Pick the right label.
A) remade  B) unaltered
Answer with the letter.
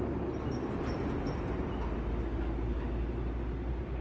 B